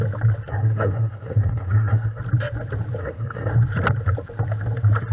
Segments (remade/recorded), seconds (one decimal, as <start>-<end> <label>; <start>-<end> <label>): 0.0-0.5 recorded; 0.5-2.2 remade; 2.2-3.0 recorded; 3.0-3.5 remade; 3.5-5.1 recorded